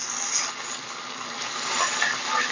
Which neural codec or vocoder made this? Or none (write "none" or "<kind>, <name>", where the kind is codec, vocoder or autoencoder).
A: none